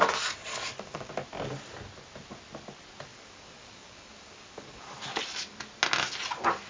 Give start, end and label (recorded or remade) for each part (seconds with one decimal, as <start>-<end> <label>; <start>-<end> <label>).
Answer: 0.0-0.5 recorded; 0.5-1.1 remade; 1.1-3.1 recorded; 3.1-5.2 remade; 5.2-6.7 recorded